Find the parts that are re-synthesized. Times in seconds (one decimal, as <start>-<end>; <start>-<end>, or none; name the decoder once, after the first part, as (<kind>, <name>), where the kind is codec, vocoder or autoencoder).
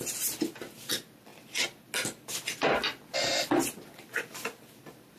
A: none